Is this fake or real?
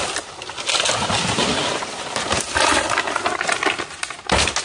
real